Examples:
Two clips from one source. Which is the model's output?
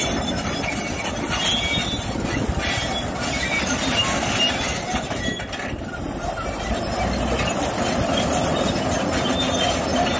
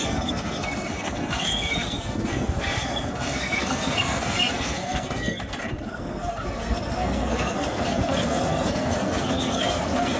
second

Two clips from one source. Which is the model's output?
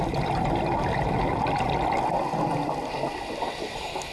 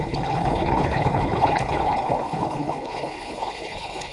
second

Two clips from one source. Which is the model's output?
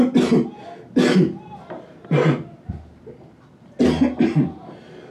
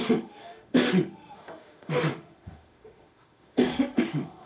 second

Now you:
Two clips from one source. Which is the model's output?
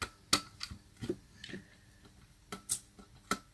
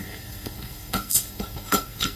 second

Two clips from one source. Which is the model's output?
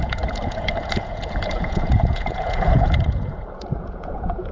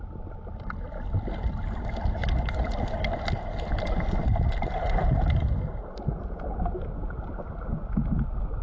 first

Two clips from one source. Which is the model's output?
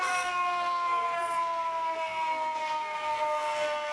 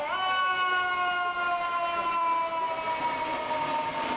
first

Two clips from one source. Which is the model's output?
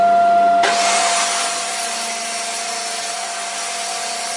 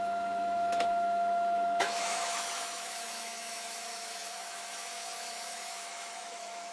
second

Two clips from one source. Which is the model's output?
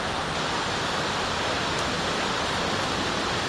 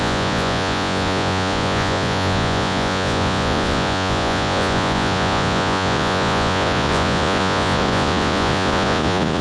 second